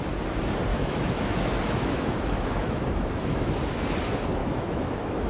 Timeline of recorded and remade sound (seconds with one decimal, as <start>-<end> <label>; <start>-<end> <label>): 0.0-0.7 recorded; 0.7-3.5 remade; 3.5-4.4 recorded; 4.4-5.3 remade